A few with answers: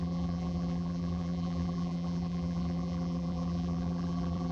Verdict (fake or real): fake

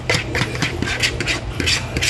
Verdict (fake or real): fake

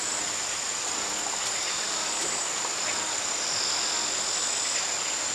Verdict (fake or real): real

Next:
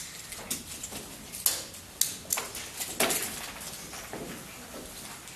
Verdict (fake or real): real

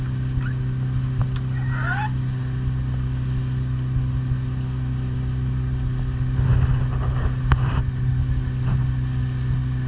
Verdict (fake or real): real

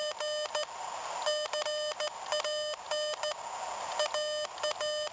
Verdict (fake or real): real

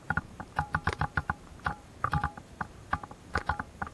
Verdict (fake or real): fake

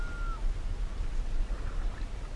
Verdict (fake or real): real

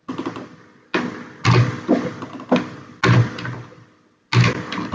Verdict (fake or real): real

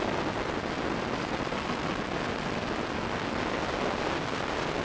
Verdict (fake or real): real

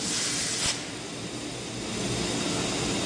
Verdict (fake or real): real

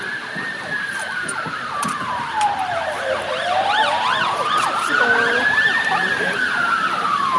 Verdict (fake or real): fake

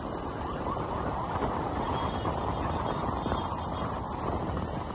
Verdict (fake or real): real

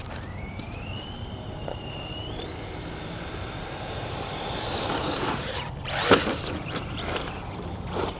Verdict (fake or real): fake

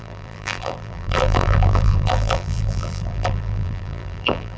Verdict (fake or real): fake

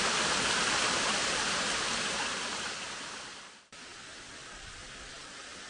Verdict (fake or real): fake